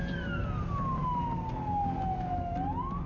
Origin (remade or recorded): recorded